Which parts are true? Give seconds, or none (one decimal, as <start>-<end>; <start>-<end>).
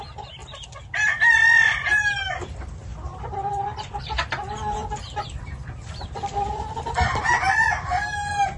0.0-0.4; 4.0-4.8; 7.6-8.6